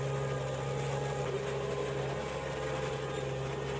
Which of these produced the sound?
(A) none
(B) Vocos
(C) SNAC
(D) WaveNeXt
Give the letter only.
A